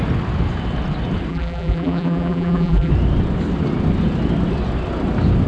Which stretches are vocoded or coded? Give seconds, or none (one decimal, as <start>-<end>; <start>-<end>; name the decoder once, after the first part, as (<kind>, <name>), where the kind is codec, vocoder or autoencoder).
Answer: 1.3-2.9 (vocoder, BigVGAN v2)